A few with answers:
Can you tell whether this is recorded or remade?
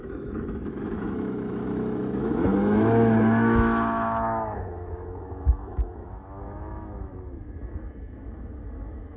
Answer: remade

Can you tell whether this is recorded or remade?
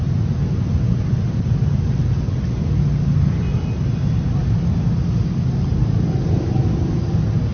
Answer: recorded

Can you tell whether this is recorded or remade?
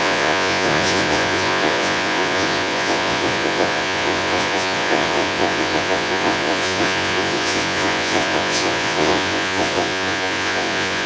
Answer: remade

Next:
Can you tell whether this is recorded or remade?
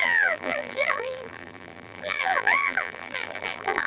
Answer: remade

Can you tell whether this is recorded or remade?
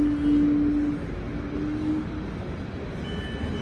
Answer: recorded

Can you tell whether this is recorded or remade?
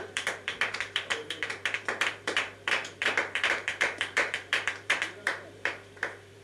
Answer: remade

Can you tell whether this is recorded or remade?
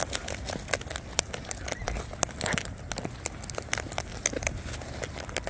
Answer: recorded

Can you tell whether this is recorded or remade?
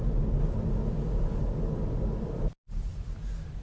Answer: recorded